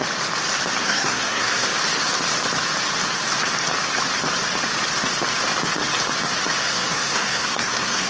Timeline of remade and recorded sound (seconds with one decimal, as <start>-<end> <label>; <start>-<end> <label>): 0.0-0.8 recorded; 0.8-1.7 remade; 1.7-6.6 recorded; 6.6-8.1 remade